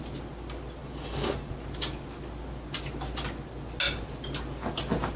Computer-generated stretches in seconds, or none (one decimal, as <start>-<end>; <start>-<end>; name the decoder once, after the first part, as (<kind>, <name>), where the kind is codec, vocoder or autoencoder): 0.8-1.5 (vocoder, BigVGAN v2)